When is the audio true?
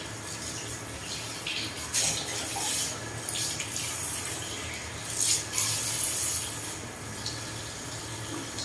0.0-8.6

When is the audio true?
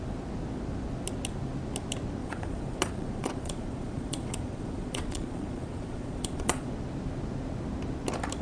0.0-2.2; 6.7-8.4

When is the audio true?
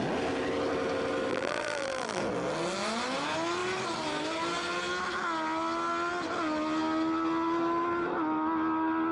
0.0-1.3; 2.2-9.1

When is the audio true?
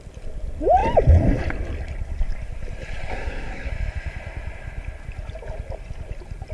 0.0-3.1; 3.7-6.5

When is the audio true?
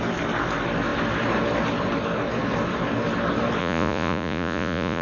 0.0-3.6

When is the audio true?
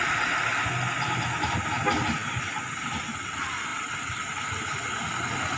0.0-3.7; 4.8-5.6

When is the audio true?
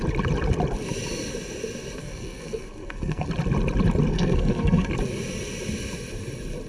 0.0-2.0; 3.3-4.1; 4.9-6.7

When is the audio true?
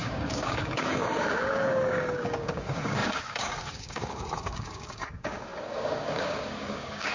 none